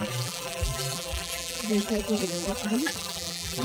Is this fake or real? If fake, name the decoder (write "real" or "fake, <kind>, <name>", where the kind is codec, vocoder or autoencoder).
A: fake, vocoder, BigVGAN v2